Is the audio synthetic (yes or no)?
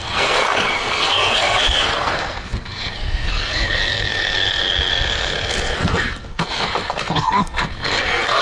yes